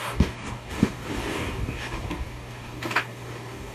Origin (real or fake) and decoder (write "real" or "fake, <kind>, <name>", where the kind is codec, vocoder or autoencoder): fake, codec, DAC